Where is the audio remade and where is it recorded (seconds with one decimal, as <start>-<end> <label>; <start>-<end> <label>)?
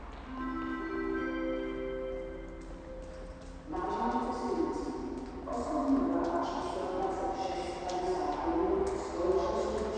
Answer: 0.0-10.0 recorded